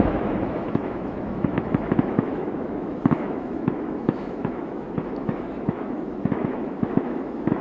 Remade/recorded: remade